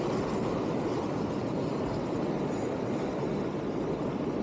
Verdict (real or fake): real